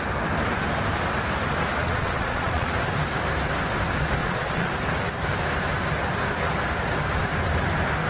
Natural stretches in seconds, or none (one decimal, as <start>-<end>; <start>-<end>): 0.0-1.8; 2.7-4.2; 4.7-8.1

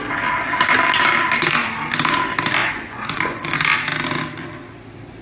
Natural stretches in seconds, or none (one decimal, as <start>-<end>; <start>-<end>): 0.0-2.6; 3.4-5.2